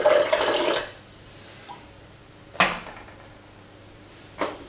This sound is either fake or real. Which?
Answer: real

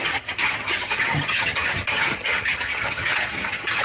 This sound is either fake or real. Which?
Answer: fake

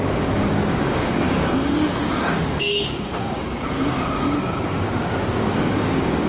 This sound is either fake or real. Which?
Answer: fake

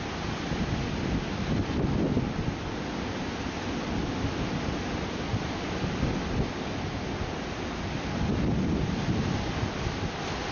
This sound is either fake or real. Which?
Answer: real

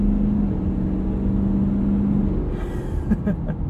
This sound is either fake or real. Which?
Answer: real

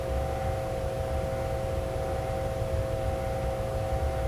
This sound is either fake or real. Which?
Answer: real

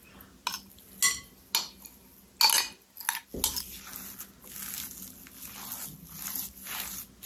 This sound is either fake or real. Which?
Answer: real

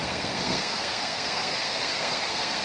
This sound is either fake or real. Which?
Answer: fake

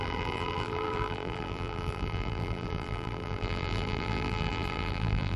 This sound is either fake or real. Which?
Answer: fake